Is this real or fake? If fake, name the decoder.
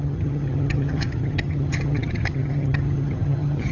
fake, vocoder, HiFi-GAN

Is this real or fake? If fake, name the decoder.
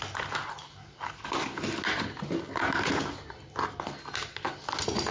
real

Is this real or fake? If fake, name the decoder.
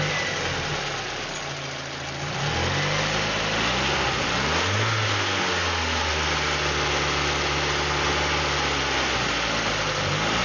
real